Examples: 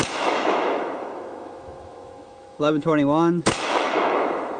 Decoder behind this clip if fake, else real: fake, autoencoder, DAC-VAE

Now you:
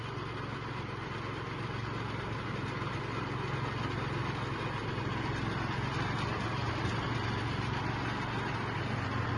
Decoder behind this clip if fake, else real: real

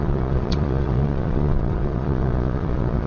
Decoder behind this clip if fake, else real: fake, vocoder, Vocos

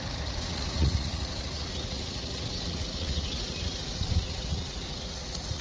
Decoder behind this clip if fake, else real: fake, vocoder, Vocos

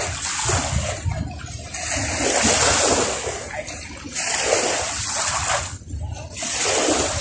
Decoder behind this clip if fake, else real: real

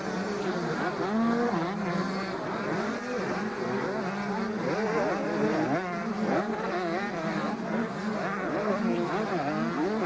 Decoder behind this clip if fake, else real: real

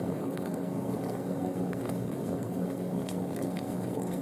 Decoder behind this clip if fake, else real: fake, codec, SNAC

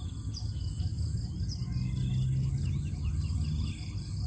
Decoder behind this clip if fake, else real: real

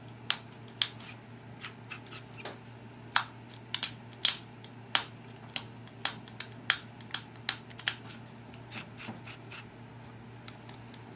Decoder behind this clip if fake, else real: real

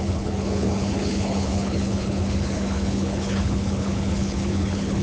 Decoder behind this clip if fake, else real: fake, codec, HILCodec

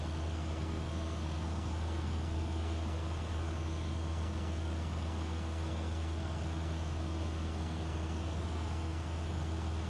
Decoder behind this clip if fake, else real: fake, codec, SNAC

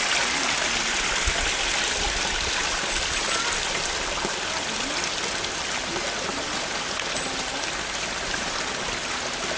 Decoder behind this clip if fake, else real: real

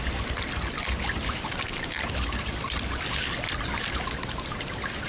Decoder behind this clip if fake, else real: real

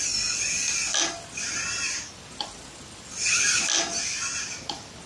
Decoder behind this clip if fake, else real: real